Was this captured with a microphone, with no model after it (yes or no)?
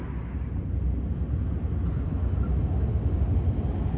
yes